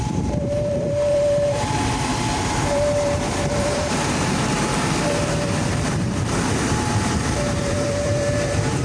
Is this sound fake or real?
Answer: fake